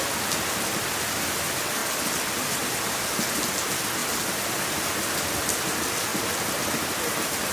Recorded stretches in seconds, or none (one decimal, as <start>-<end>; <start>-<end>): 0.0-7.5